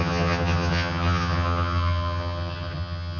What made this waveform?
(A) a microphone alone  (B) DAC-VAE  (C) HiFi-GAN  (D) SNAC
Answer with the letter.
C